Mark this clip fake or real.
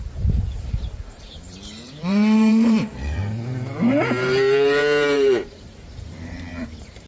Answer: fake